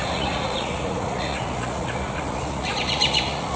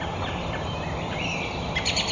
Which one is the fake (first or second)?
first